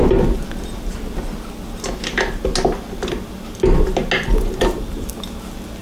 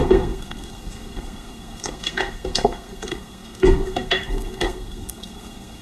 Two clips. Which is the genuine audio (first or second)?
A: first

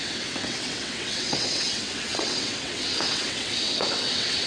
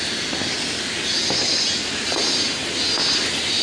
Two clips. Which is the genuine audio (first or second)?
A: second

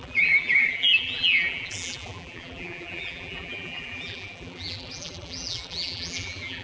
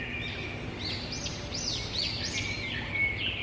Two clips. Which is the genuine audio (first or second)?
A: second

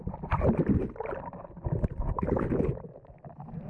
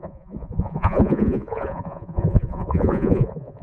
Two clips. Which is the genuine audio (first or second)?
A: first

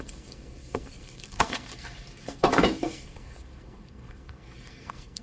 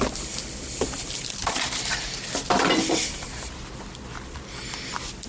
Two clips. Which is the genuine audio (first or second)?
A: second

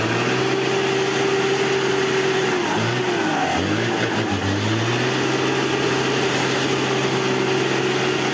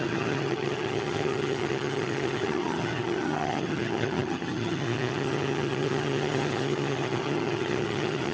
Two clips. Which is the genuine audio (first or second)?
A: first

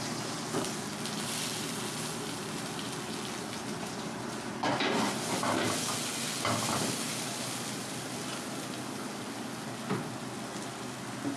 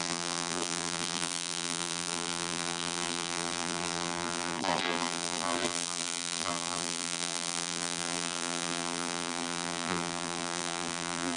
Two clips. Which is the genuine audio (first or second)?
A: first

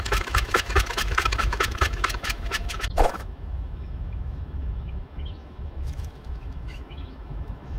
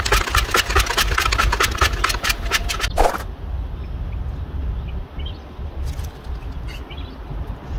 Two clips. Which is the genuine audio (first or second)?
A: second